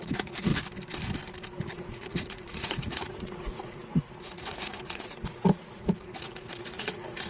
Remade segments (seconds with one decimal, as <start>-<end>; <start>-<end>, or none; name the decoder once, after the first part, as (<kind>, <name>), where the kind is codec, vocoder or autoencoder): 0.0-0.5 (vocoder, Vocos); 1.6-7.3